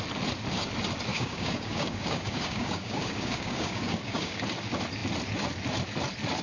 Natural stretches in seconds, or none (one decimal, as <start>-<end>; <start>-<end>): 0.0-1.1; 4.4-6.4